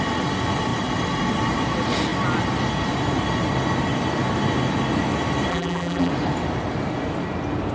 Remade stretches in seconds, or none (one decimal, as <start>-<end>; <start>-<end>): 5.5-6.1